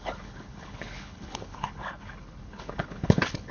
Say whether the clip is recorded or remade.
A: remade